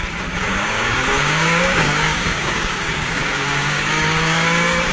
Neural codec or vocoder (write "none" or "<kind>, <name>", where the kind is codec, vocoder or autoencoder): codec, DAC